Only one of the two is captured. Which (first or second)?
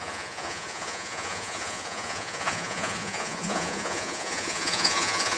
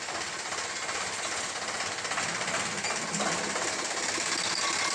second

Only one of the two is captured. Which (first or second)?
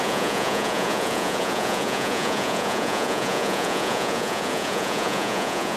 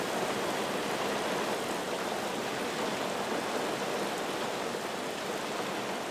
second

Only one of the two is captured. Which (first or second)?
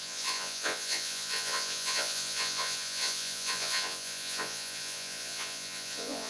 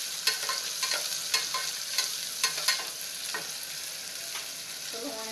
second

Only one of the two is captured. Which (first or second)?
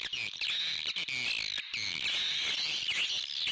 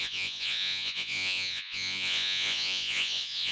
first